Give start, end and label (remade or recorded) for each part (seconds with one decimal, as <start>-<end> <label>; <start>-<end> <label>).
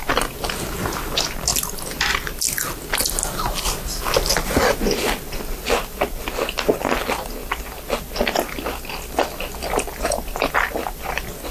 0.0-11.5 recorded